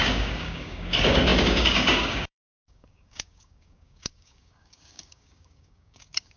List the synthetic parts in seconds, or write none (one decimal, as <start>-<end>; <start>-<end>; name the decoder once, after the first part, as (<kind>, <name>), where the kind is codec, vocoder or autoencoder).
0.0-6.4 (codec, DAC)